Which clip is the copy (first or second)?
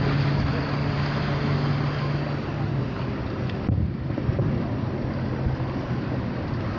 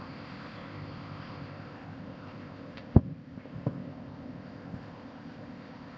second